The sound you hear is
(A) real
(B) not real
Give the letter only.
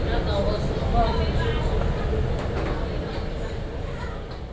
A